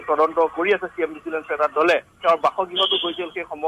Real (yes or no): yes